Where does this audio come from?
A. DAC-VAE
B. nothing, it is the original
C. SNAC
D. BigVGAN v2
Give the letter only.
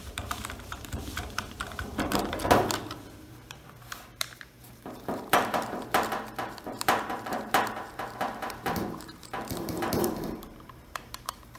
D